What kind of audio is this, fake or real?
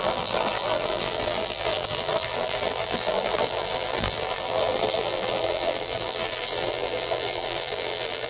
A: fake